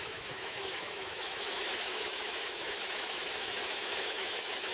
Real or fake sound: fake